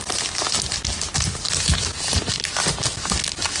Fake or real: real